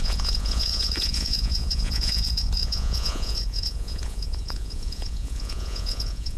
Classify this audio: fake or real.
fake